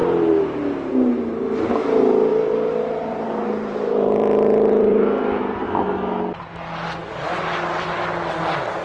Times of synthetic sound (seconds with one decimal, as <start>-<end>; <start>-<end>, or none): 2.3-5.4